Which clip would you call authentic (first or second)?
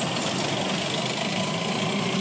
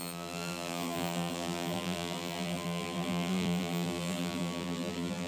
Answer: first